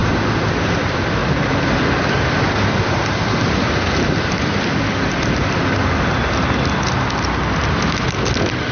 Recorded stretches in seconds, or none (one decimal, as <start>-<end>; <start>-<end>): 0.7-1.2; 5.6-8.7